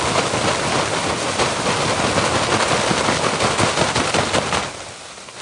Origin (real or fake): real